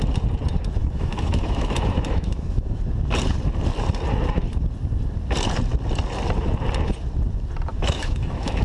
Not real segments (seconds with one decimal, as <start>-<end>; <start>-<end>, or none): 0.8-2.8; 7.7-8.6